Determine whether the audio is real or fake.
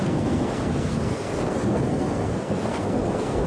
fake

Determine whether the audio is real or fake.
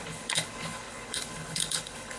fake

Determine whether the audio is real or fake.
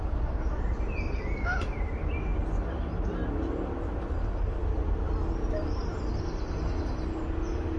real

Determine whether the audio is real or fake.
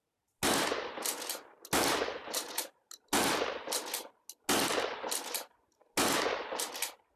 real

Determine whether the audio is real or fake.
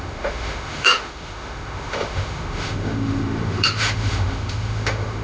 fake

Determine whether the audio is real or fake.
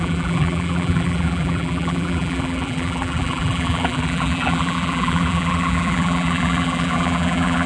fake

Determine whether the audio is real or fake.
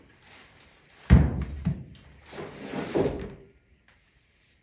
fake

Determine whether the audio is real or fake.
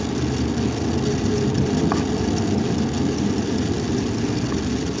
real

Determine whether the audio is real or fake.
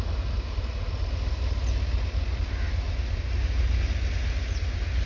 real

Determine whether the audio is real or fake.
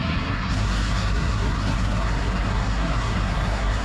fake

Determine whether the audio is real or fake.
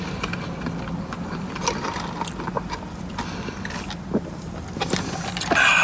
real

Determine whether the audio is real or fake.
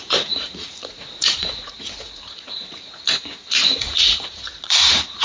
fake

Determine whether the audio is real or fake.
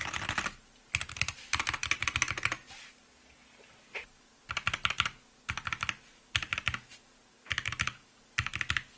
real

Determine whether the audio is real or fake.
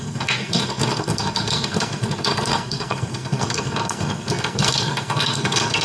fake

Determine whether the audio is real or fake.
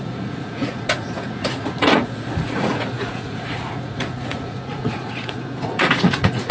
fake